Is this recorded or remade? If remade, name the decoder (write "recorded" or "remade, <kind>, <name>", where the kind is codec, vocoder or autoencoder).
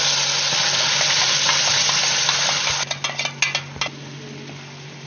recorded